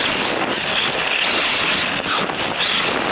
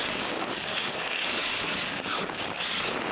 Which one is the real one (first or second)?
first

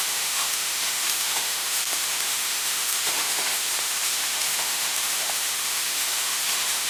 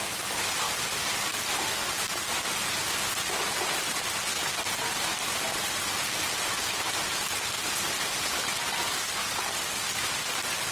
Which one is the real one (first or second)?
second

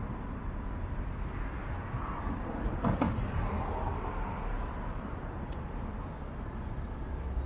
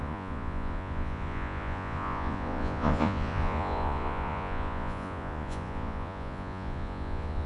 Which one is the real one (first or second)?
first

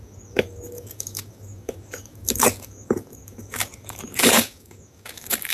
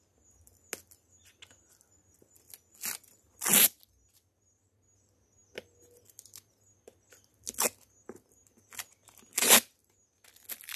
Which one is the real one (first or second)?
second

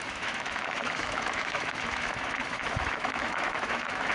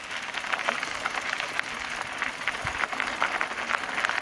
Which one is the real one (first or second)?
second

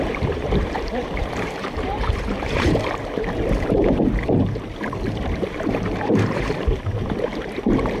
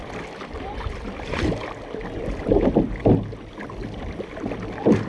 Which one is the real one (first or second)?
second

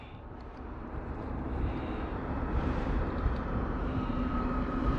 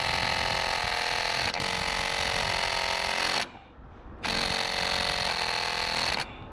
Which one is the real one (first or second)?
second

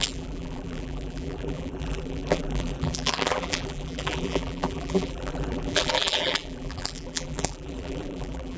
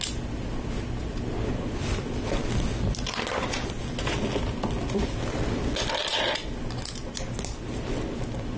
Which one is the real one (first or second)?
second